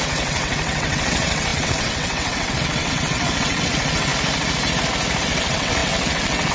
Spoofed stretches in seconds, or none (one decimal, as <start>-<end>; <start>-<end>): 0.0-4.1; 5.2-6.5